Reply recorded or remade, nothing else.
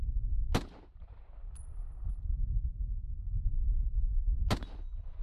recorded